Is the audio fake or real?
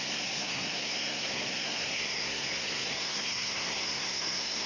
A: fake